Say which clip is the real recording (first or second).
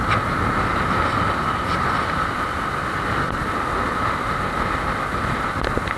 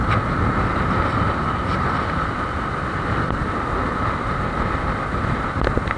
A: first